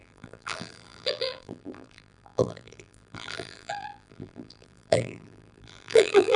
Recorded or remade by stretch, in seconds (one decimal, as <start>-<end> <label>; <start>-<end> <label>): 0.0-6.4 remade